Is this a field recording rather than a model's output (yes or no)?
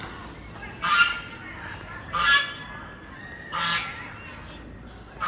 yes